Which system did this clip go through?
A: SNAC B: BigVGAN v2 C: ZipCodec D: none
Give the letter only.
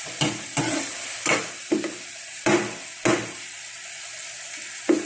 D